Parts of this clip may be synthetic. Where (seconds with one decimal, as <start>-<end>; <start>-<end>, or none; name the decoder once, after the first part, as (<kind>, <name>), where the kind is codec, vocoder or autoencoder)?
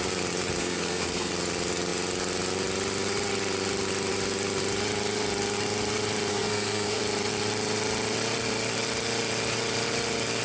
0.6-1.3 (codec, SNAC); 6.3-7.0